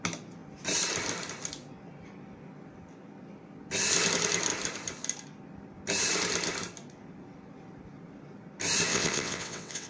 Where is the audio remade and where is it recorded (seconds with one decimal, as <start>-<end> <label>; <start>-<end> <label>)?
0.0-8.9 recorded; 8.9-9.9 remade